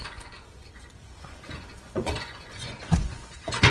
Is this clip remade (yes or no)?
yes